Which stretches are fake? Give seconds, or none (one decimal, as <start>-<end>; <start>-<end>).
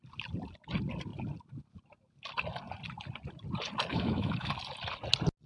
3.9-4.5